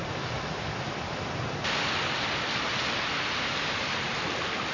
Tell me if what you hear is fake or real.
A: real